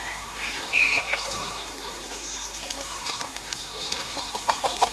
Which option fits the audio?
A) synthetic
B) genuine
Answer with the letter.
A